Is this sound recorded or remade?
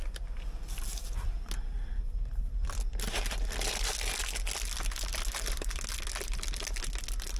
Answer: recorded